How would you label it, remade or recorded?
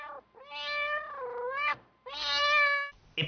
recorded